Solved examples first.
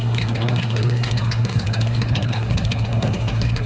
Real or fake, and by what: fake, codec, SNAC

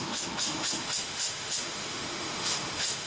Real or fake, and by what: fake, autoencoder, DAC-VAE